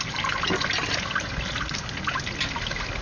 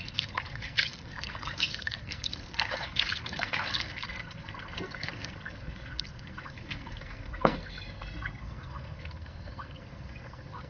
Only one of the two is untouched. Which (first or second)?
first